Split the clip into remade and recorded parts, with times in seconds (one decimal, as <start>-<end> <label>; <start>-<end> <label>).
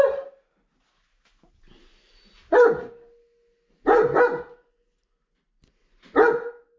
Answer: 0.0-6.8 recorded